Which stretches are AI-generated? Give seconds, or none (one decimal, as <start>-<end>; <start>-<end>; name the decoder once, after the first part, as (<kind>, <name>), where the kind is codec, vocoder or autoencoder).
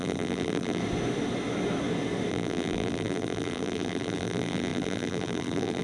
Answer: 0.0-0.8 (vocoder, BigVGAN v2); 2.3-5.8